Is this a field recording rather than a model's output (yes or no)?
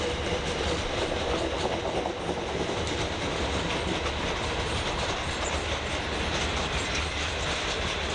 yes